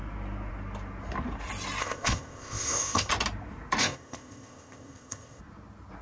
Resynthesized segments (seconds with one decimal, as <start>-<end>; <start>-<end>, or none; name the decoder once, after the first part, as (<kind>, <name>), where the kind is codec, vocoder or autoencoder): 1.8-3.1 (codec, ZipCodec); 3.8-5.4